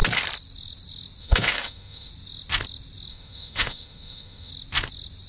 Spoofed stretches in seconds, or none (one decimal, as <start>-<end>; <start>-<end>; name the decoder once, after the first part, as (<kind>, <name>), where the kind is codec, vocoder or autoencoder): 1.2-2.1 (autoencoder, DAC-VAE); 3.1-4.5